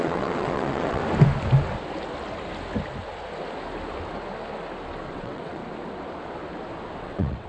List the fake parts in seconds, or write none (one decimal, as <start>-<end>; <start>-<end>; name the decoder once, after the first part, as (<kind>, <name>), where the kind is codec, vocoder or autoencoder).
0.0-1.0 (vocoder, WaveNeXt); 5.1-5.6; 7.0-7.5